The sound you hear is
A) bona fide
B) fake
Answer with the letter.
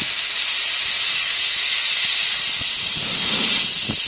A